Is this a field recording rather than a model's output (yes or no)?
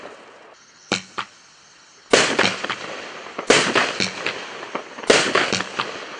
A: yes